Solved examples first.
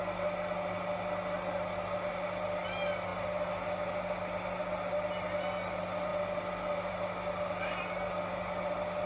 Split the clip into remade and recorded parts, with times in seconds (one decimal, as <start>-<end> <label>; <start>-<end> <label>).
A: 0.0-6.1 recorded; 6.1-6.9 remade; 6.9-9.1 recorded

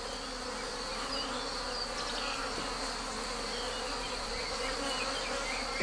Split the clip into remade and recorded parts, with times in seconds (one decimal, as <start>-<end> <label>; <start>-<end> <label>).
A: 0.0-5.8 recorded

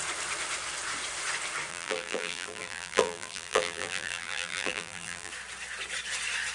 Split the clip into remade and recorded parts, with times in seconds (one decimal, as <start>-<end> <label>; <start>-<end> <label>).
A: 0.0-1.7 recorded; 1.7-5.3 remade; 5.3-6.5 recorded

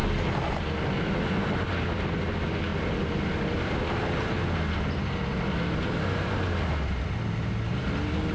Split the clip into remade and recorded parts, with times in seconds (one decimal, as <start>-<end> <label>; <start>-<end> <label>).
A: 0.0-8.3 recorded